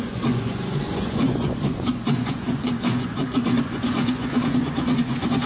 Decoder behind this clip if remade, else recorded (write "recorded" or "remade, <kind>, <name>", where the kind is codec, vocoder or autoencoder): remade, vocoder, Vocos